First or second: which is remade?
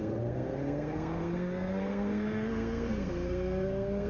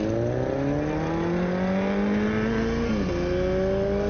first